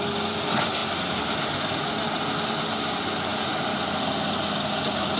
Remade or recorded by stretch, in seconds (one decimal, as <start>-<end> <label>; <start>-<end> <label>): 0.0-5.2 recorded